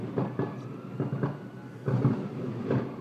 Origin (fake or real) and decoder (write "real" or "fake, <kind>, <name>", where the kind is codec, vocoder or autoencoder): real